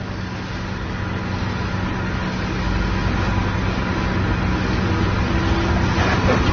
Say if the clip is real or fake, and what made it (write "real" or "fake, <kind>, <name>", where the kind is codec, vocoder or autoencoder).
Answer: real